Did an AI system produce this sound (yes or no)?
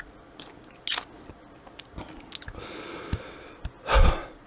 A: no